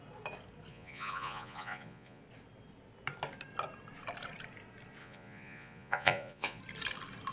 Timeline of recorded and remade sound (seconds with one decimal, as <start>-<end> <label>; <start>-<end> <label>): 0.0-0.7 recorded; 0.7-2.2 remade; 2.2-5.0 recorded; 5.0-6.6 remade; 6.6-7.3 recorded